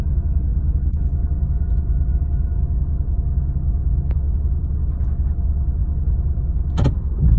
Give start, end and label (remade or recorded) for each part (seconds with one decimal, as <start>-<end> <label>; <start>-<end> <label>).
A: 0.0-7.4 recorded